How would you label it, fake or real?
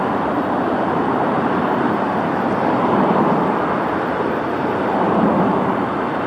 fake